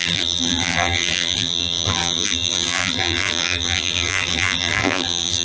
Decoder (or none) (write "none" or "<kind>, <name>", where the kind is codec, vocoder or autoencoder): vocoder, BigVGAN v2